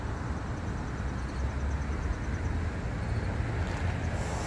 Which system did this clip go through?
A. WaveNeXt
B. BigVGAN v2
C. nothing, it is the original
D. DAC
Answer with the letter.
C